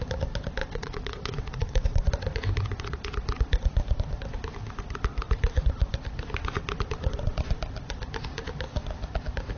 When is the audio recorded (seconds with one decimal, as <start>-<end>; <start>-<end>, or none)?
0.0-0.6; 2.1-9.6